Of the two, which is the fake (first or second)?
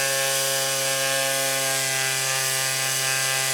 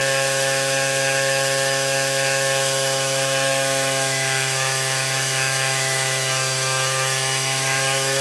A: second